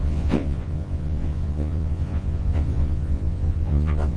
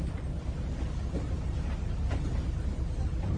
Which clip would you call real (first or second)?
second